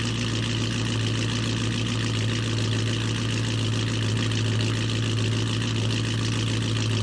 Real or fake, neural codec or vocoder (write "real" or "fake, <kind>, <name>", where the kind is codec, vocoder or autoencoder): real